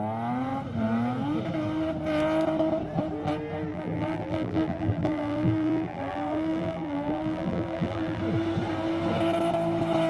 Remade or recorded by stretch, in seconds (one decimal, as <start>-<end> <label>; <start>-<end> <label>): 0.0-3.7 recorded; 3.7-8.2 remade; 8.2-10.1 recorded